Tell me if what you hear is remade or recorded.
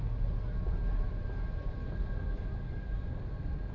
recorded